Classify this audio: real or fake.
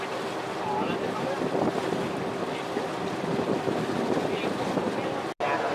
real